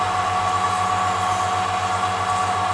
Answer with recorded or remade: recorded